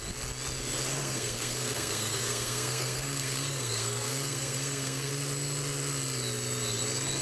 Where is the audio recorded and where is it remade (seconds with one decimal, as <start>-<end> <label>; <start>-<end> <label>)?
0.0-1.0 recorded; 1.0-5.1 remade; 5.1-7.2 recorded